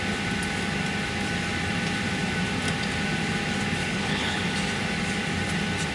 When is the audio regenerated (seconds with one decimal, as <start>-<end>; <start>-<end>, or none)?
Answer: 3.8-4.4